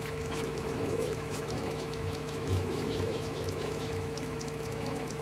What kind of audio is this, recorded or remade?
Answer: remade